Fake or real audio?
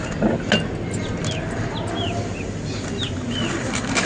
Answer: real